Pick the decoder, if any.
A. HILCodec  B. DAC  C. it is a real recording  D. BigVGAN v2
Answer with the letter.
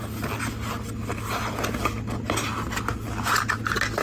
C